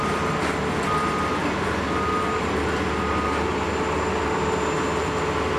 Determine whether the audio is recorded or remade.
recorded